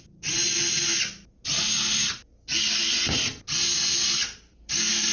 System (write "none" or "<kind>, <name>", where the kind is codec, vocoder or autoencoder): none